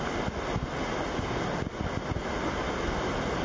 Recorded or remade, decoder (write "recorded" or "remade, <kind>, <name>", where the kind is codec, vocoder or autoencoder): recorded